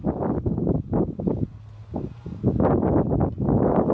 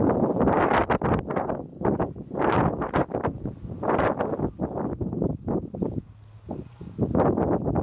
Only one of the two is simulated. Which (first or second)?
second